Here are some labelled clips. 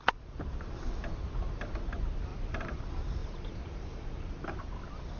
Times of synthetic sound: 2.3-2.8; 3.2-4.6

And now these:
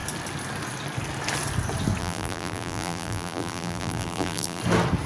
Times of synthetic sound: 2.0-4.6

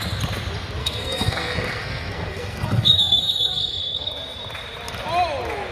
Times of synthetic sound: 0.8-4.1